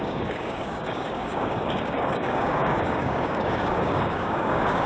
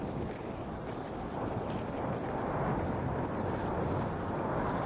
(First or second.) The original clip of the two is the second